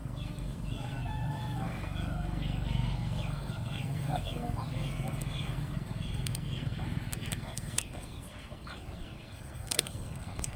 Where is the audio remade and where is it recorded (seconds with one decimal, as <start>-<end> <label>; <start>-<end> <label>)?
0.0-10.6 remade